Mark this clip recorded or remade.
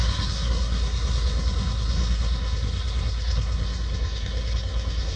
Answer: remade